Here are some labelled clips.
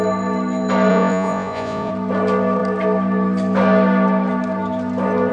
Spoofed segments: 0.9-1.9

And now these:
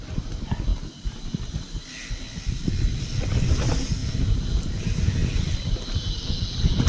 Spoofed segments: none

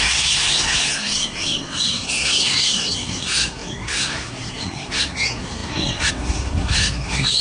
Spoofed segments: 0.0-7.4